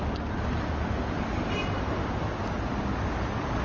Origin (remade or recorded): recorded